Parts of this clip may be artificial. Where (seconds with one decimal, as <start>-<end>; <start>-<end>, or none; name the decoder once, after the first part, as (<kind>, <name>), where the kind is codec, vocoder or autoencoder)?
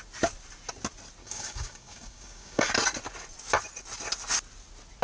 1.2-2.7 (codec, DAC)